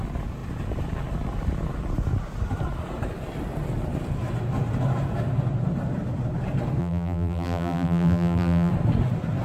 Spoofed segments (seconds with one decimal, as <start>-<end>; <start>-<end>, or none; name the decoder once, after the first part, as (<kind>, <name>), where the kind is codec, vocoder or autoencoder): 6.8-8.7 (vocoder, BigVGAN v2)